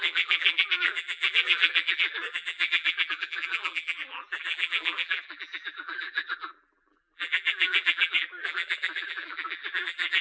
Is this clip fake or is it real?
fake